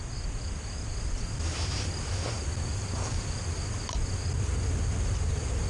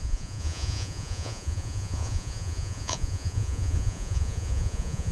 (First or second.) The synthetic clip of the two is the second